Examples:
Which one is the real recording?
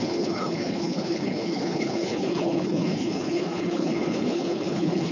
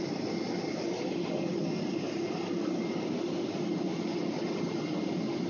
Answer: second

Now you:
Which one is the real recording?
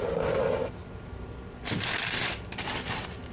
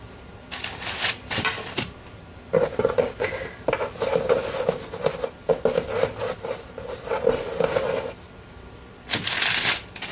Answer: first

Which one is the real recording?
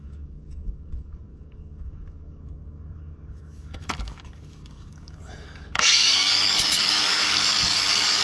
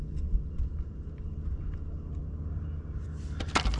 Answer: second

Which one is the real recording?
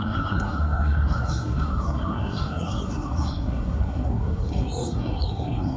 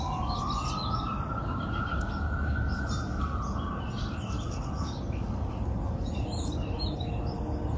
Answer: second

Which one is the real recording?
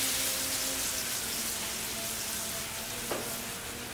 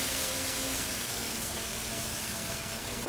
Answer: first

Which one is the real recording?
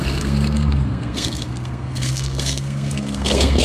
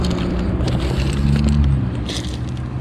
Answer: second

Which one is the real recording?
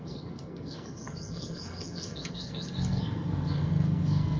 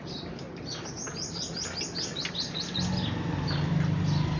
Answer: second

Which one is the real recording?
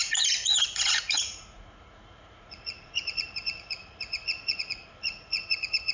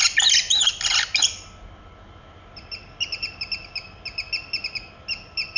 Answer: second